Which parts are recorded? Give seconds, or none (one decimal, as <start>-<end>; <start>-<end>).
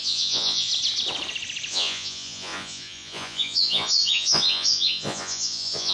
0.7-1.7